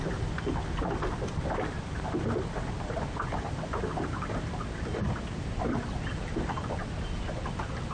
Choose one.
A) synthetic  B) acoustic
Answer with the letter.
B